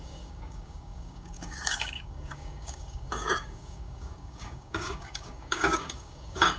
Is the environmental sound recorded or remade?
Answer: remade